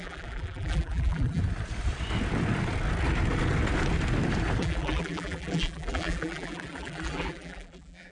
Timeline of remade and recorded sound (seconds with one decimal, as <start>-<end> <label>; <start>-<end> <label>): 0.0-1.4 remade; 1.4-4.6 recorded; 4.6-8.1 remade